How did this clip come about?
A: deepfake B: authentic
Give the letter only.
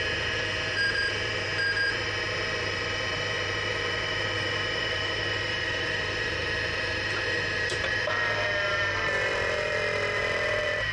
A